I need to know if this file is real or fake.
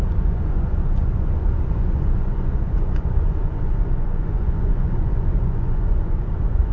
fake